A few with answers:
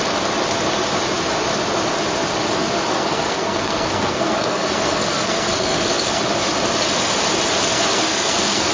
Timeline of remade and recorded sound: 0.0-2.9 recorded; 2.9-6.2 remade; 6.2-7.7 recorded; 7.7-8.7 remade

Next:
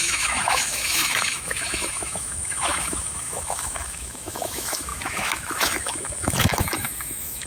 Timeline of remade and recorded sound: 0.0-7.5 remade

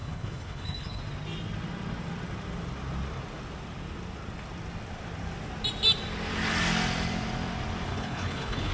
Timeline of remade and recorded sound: 0.0-1.0 remade; 1.0-7.9 recorded; 7.9-8.7 remade

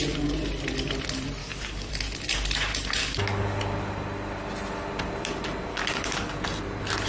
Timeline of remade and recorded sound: 0.0-1.4 recorded; 1.4-1.9 remade; 1.9-3.0 recorded; 3.0-3.6 remade; 3.6-5.7 recorded; 5.7-6.3 remade; 6.3-7.1 recorded

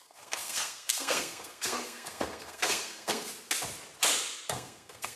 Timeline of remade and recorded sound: 0.0-3.3 remade; 3.3-4.4 recorded; 4.4-5.2 remade